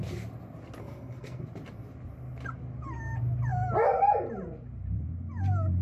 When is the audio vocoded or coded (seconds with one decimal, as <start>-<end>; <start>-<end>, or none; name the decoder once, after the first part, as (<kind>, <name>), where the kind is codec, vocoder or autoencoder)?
0.8-1.4 (codec, SNAC)